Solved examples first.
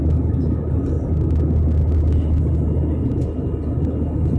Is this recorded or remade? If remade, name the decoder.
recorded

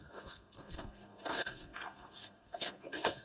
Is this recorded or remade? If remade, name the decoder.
remade, codec, SNAC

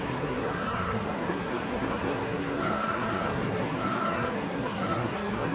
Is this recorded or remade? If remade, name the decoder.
remade, codec, SNAC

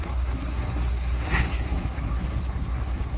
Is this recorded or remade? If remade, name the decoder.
remade, codec, SNAC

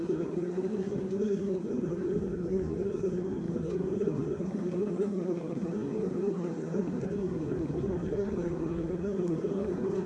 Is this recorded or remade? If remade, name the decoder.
remade, codec, SNAC